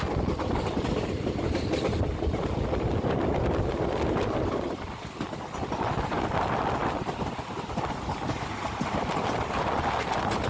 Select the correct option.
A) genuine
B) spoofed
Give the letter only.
A